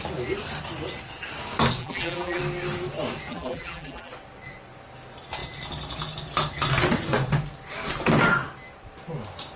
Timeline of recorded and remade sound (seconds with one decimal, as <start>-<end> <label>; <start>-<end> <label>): 0.0-1.8 recorded; 1.8-2.4 remade; 2.4-3.3 recorded; 3.3-4.1 remade; 4.1-9.6 recorded